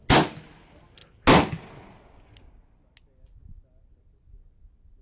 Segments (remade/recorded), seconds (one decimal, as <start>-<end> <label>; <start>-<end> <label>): 0.0-5.0 recorded